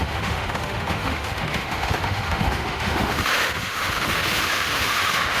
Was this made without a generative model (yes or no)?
no